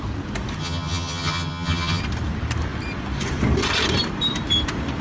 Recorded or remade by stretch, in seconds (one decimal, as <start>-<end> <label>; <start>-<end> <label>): 0.0-0.6 recorded; 0.6-2.0 remade; 2.0-5.0 recorded